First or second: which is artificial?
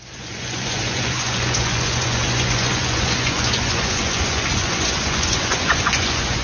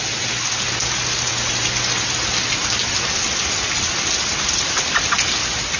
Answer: first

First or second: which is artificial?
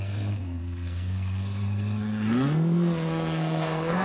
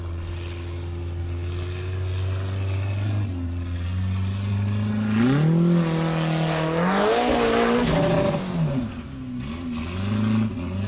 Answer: first